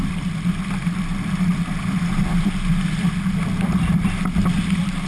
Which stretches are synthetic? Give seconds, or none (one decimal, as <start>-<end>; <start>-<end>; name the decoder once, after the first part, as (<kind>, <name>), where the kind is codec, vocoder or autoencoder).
none